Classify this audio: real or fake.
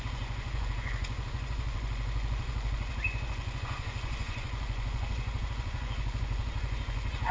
fake